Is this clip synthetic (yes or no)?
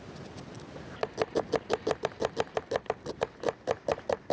no